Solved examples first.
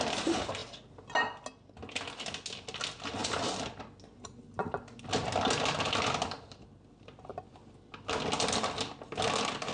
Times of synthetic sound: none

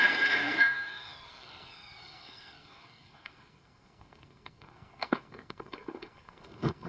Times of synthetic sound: 0.0-6.9 (codec, SNAC)

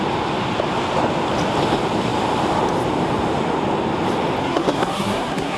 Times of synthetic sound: 4.4-5.6 (codec, SNAC)

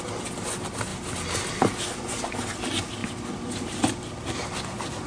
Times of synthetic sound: none